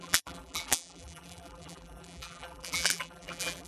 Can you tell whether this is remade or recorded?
remade